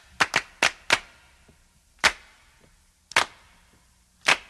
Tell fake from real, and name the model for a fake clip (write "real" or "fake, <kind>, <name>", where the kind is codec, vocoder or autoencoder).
real